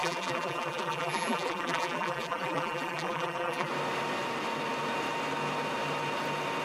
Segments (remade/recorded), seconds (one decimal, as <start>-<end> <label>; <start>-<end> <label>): 0.0-3.7 remade; 3.7-6.6 recorded